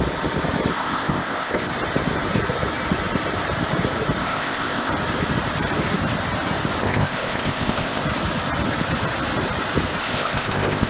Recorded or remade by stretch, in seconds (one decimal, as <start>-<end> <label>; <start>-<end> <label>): 0.0-0.7 recorded; 0.7-1.7 remade; 1.7-4.2 recorded; 4.2-4.9 remade; 4.9-6.8 recorded; 6.8-8.0 remade; 8.0-10.0 recorded; 10.0-10.9 remade